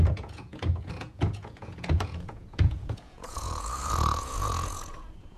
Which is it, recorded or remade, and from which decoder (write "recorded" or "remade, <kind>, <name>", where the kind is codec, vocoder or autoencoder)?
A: remade, vocoder, Vocos